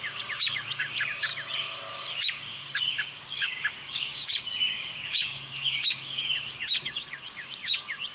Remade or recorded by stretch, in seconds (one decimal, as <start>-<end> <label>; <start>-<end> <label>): 0.0-1.3 remade; 1.3-2.2 recorded; 2.2-8.1 remade